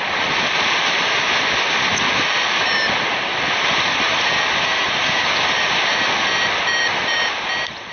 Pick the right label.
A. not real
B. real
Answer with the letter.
B